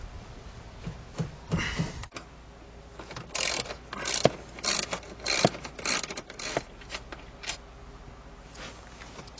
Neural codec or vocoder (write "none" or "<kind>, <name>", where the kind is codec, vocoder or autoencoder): none